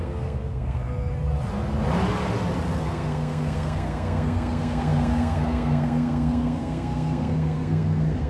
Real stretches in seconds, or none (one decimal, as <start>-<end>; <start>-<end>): 1.1-2.8